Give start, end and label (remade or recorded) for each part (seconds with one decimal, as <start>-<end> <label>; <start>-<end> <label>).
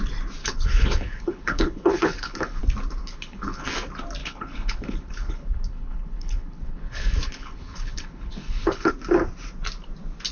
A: 0.0-0.4 recorded; 0.4-2.6 remade; 2.6-3.0 recorded; 3.0-3.7 remade; 3.7-4.2 recorded; 4.2-8.9 remade; 8.9-10.3 recorded